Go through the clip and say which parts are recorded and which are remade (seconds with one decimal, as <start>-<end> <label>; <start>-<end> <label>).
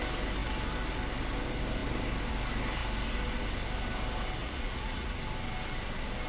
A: 0.0-4.4 recorded; 4.4-5.2 remade; 5.2-6.3 recorded